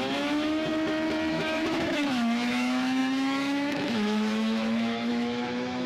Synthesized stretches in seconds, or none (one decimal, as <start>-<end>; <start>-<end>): 0.0-0.7; 1.3-5.9